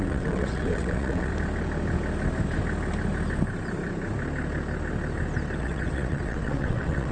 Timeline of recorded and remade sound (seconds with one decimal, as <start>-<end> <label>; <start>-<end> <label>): 0.0-1.3 remade; 1.3-5.6 recorded; 5.6-7.1 remade